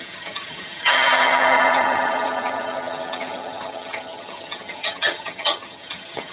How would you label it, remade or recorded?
remade